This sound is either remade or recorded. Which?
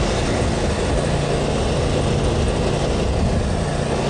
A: recorded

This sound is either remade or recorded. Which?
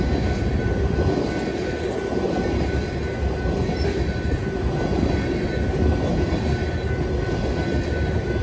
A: recorded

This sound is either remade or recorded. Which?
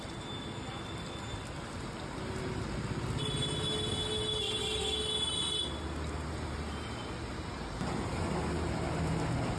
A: recorded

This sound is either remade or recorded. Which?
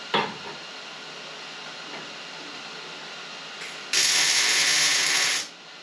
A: recorded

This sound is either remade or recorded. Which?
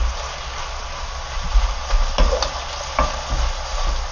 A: recorded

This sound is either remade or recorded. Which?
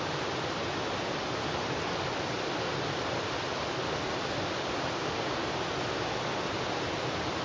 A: recorded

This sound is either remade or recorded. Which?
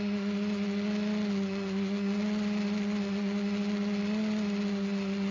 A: recorded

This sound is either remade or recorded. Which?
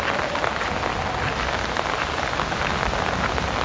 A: recorded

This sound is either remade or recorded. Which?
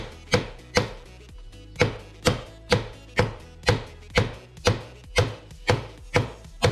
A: recorded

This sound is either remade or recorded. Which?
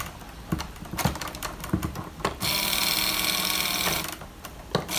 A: recorded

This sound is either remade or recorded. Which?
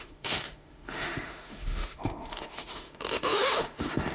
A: remade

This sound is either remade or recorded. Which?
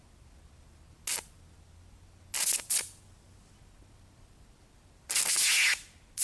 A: recorded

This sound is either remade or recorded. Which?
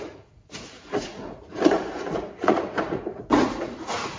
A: remade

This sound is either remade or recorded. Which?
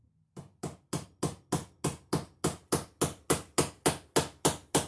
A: recorded